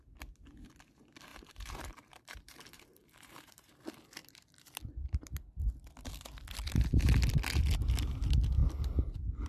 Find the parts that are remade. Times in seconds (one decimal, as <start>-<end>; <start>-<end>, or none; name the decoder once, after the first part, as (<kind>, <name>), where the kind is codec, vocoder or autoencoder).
1.3-3.8 (vocoder, BigVGAN v2)